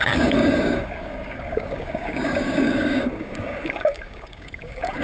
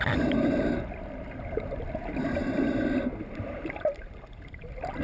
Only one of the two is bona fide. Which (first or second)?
second